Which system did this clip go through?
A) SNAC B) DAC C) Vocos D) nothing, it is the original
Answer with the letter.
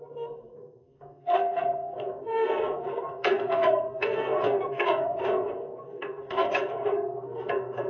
A